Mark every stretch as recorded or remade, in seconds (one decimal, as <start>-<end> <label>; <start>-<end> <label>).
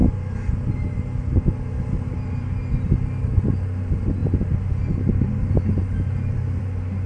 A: 0.0-7.1 recorded